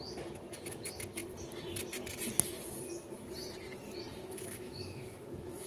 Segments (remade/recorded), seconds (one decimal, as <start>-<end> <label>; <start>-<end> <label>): 0.0-4.1 recorded; 4.1-5.7 remade